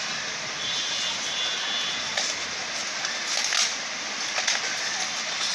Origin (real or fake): real